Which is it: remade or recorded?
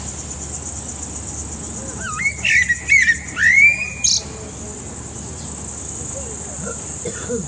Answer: recorded